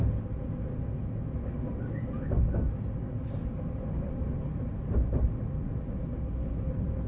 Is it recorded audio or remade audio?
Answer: recorded